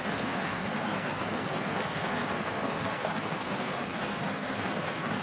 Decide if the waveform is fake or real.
fake